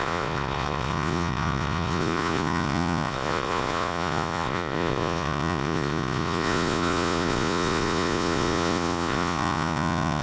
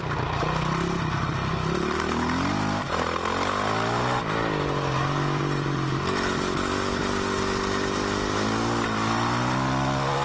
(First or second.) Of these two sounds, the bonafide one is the second